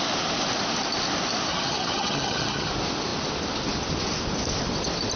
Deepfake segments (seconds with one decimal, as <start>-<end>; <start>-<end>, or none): 1.5-2.7